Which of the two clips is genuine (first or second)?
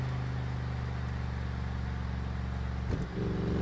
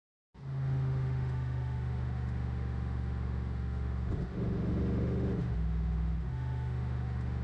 first